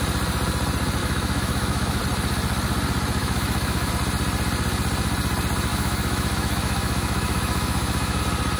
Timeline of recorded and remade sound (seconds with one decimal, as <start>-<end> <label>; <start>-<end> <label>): 0.0-1.0 recorded; 1.0-2.0 remade; 2.0-3.2 recorded; 3.2-3.9 remade; 3.9-5.7 recorded; 5.7-8.2 remade; 8.2-8.6 recorded